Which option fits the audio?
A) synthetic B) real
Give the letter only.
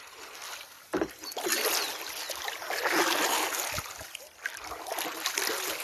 B